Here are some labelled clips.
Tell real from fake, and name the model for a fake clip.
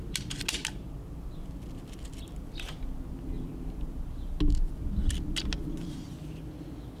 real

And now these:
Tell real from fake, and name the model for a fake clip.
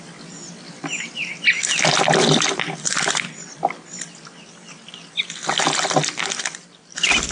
real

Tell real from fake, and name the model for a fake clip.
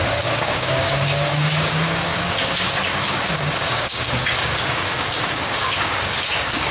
fake, codec, DAC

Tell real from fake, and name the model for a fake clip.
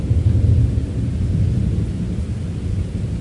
real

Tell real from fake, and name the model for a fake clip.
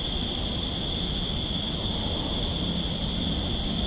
real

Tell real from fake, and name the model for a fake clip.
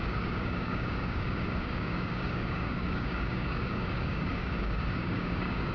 fake, codec, DAC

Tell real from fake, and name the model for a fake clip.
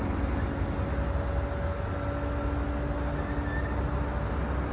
real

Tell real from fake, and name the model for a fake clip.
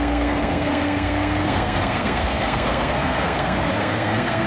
fake, codec, SNAC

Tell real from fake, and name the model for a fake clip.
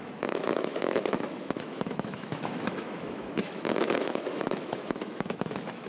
fake, autoencoder, DAC-VAE